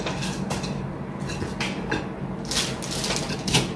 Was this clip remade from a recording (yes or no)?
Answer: no